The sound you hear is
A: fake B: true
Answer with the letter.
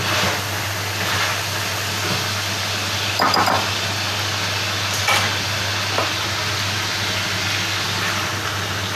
B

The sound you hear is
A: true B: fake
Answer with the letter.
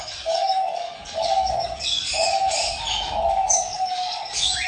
B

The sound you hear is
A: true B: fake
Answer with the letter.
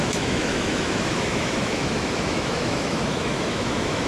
B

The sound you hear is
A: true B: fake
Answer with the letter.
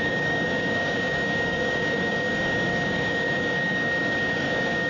B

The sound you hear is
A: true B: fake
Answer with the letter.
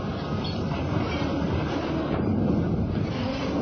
A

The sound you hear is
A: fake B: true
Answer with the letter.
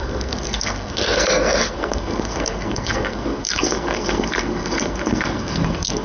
A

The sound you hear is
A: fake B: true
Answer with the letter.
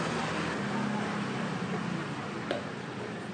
B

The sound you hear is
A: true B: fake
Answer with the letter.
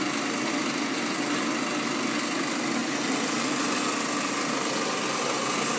A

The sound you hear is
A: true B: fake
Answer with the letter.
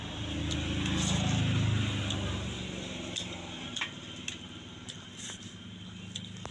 A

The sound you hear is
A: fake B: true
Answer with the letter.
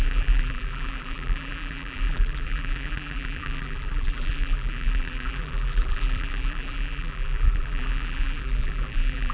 A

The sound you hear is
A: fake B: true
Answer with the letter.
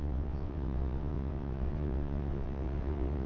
A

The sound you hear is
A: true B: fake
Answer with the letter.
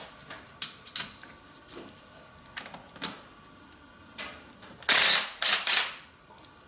A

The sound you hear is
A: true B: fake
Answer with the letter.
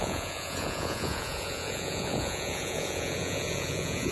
B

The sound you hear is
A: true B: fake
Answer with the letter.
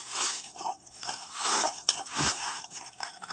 B